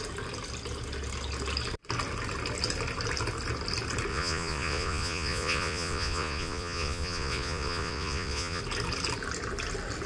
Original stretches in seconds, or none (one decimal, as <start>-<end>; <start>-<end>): 0.0-4.1; 8.6-10.1